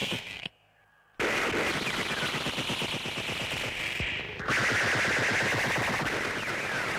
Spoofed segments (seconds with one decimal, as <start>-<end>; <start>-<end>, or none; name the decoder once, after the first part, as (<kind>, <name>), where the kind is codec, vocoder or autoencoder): 0.0-0.8 (codec, SNAC)